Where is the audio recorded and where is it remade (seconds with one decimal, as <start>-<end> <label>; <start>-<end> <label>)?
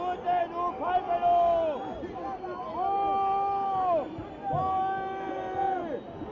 0.0-6.3 recorded